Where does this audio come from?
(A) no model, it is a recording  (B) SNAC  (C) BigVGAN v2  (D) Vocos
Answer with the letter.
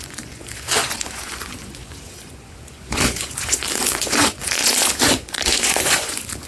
D